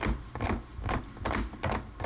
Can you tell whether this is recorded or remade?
recorded